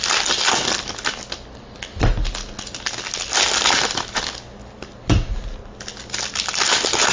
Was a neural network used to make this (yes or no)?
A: no